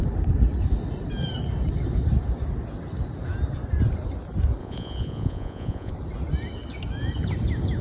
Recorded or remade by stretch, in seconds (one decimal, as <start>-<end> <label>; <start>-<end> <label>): 0.0-4.6 recorded; 4.6-5.9 remade; 5.9-7.8 recorded